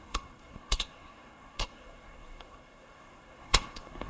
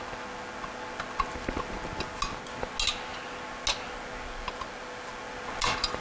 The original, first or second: second